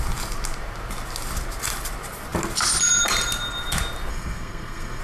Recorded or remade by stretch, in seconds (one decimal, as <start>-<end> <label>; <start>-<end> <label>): 0.0-4.1 recorded; 4.1-5.0 remade